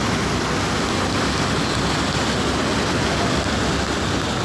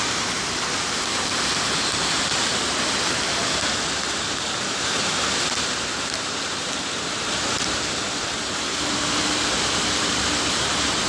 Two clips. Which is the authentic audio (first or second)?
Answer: first